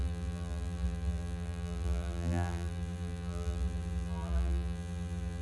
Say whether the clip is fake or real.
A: fake